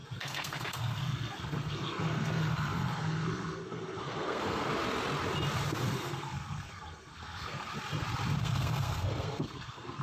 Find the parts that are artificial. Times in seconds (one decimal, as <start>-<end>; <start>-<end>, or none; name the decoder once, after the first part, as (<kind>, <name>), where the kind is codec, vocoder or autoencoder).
0.0-4.7 (codec, SNAC); 5.8-7.7; 8.4-10.0

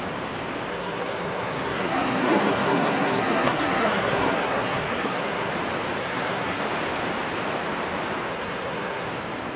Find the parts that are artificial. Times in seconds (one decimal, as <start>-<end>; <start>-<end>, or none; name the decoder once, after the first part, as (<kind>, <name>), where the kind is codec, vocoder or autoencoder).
0.7-5.5 (codec, SNAC); 6.0-6.6; 8.3-9.1

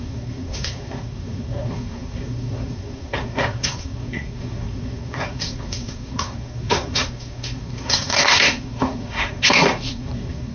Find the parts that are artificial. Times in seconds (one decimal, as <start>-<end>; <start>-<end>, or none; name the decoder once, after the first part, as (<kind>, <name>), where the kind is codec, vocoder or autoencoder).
0.0-10.5 (codec, SNAC)

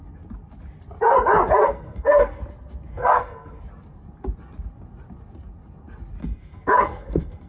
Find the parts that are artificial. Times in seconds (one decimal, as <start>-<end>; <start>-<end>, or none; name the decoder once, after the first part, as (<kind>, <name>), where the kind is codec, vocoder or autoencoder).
1.6-2.4 (codec, SNAC); 2.9-3.6; 6.2-7.5

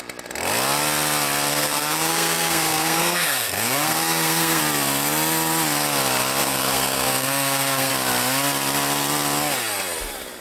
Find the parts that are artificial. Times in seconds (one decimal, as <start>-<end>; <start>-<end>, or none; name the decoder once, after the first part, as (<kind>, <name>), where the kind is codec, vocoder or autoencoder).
1.5-4.6 (codec, SNAC); 6.4-7.9

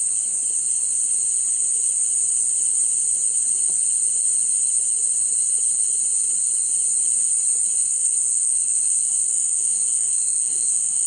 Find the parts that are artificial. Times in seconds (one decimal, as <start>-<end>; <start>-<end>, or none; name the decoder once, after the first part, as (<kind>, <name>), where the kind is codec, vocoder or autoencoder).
7.8-11.1 (codec, SNAC)

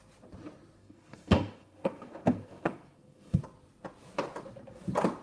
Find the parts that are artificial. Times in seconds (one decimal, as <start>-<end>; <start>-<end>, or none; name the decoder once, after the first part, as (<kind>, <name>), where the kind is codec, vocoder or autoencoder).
0.8-3.4 (codec, SNAC)